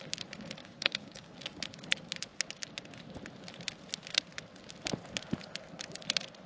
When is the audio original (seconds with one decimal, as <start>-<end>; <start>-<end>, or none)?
0.0-0.6; 1.3-6.5